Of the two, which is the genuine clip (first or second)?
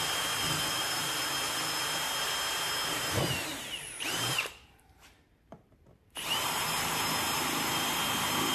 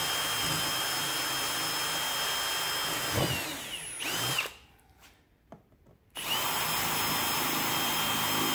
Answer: second